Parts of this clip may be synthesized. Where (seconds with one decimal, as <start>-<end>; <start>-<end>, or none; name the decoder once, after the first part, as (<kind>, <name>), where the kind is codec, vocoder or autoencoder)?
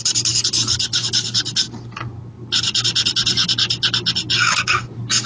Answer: none